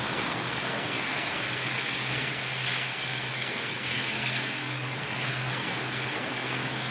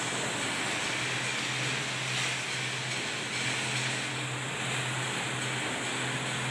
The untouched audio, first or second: second